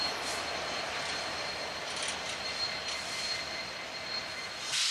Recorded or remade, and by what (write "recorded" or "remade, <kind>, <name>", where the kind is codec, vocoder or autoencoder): recorded